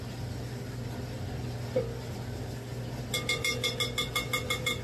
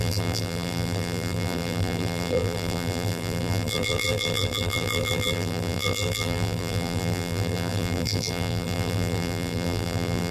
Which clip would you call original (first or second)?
first